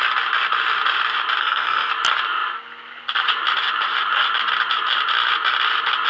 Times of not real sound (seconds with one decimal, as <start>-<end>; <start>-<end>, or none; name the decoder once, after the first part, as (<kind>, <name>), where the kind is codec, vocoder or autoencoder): 1.4-1.9 (codec, SNAC)